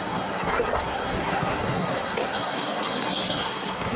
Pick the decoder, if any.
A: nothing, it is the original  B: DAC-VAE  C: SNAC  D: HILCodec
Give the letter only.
C